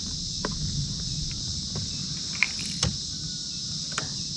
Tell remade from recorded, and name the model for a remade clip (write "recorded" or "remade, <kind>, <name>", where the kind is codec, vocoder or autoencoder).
recorded